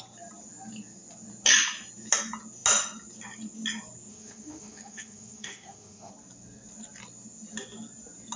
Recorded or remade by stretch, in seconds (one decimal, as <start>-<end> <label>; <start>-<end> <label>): 0.0-4.1 recorded; 4.1-6.1 remade; 6.1-8.4 recorded